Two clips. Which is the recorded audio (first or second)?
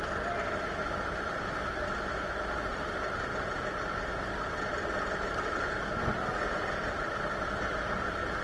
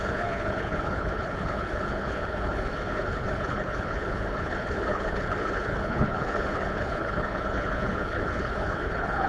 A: first